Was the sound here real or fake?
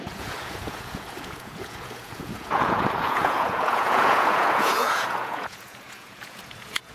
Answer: fake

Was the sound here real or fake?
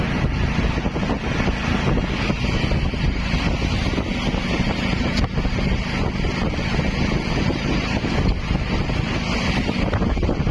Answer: real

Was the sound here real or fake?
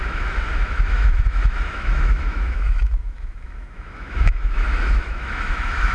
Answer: fake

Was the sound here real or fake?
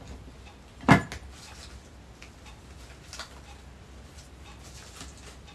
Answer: real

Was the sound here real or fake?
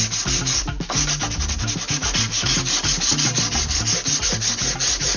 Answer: real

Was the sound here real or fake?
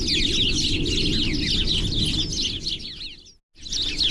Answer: real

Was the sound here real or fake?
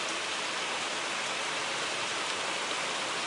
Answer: real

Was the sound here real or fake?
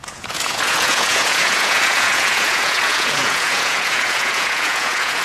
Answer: fake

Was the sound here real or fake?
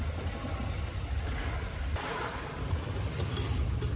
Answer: real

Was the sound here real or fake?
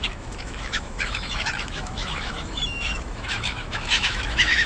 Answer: fake